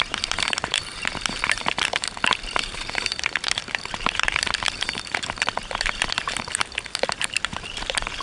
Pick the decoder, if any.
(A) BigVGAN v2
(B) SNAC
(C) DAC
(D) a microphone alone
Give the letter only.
A